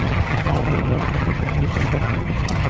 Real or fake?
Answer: fake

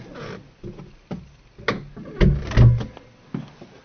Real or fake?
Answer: real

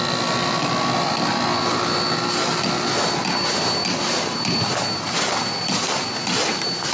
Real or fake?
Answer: real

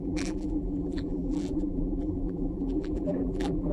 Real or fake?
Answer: fake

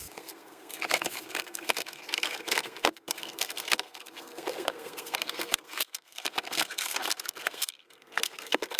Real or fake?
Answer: fake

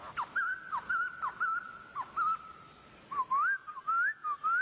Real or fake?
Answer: real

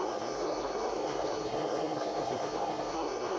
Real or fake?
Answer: fake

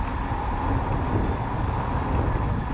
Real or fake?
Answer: real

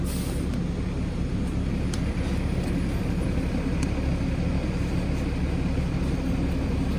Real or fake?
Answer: real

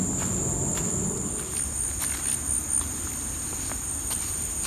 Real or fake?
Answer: real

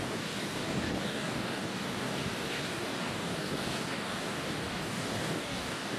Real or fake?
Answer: fake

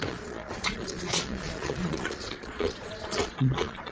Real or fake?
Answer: fake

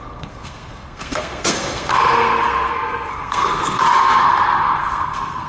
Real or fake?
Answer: fake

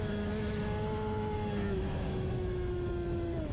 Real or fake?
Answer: fake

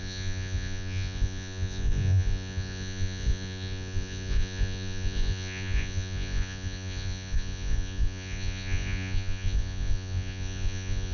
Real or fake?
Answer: fake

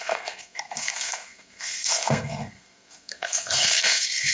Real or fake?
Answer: fake